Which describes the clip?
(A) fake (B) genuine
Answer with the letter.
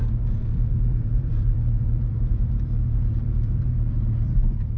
A